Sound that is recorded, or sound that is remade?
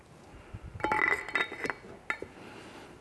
recorded